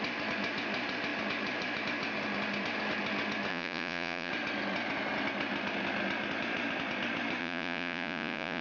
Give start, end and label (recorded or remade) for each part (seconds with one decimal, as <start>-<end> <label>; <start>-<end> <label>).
0.0-3.5 recorded; 3.5-4.3 remade; 4.3-7.4 recorded; 7.4-8.6 remade